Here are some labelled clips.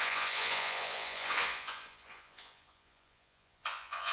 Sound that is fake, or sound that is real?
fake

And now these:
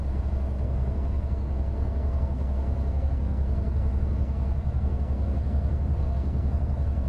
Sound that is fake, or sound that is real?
fake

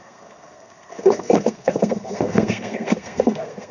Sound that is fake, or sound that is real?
fake